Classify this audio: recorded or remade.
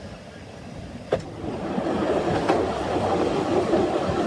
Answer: recorded